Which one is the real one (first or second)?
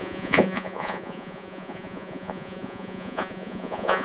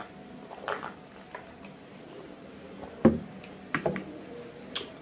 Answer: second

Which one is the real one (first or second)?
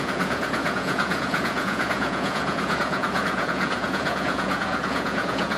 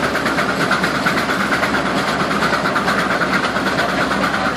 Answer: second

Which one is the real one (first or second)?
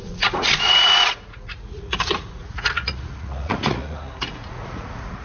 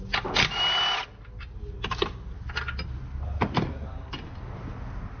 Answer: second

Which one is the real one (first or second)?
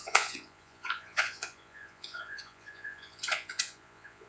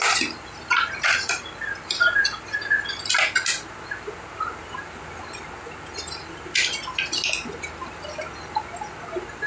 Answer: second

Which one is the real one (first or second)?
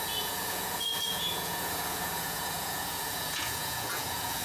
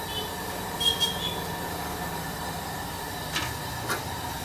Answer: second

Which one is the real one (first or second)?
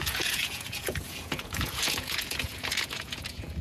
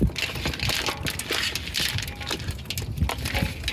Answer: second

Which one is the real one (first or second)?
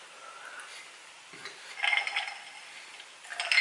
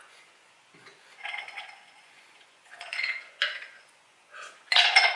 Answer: first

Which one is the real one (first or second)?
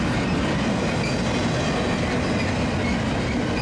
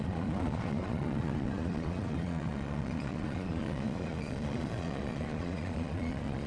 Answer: first